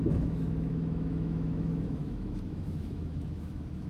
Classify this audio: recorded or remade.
remade